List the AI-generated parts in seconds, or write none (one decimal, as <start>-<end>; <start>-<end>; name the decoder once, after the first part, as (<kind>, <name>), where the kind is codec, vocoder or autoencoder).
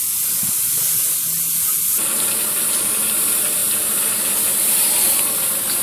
none